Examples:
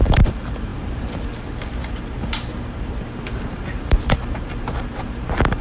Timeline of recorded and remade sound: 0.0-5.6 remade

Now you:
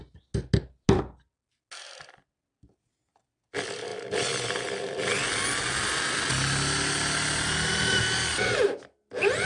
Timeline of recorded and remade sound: 0.0-9.5 recorded